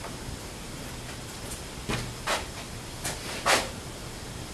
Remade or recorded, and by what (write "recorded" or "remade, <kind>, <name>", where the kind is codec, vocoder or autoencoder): recorded